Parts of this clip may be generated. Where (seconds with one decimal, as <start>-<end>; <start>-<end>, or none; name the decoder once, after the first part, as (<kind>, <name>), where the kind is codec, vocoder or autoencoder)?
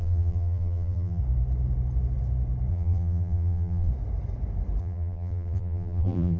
0.0-1.2 (vocoder, BigVGAN v2); 2.7-3.9; 4.8-6.4